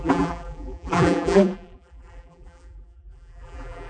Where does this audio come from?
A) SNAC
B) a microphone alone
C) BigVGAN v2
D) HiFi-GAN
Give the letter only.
C